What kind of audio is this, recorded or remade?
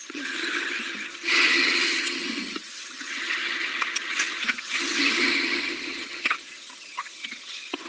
remade